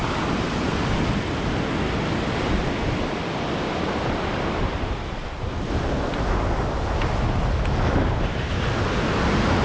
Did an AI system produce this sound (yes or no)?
no